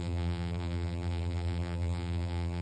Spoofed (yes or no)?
yes